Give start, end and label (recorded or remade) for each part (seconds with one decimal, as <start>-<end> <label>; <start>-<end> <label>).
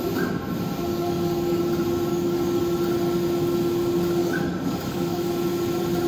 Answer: 0.0-0.9 recorded; 0.9-1.6 remade; 1.6-2.1 recorded; 2.1-2.6 remade; 2.6-4.2 recorded; 4.2-5.3 remade; 5.3-6.1 recorded